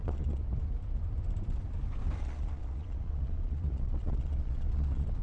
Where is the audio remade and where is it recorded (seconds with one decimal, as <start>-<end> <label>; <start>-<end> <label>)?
0.0-0.4 remade; 0.4-2.2 recorded; 2.2-5.2 remade